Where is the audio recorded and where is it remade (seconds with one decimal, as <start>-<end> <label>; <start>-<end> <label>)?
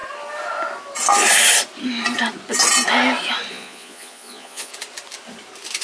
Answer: 0.0-3.5 recorded; 3.5-4.7 remade; 4.7-5.8 recorded